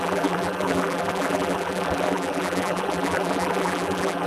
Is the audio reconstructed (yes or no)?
yes